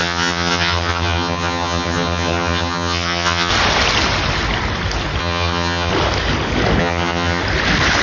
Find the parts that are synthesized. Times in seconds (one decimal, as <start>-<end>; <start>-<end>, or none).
0.0-3.5; 5.2-5.9; 6.8-7.4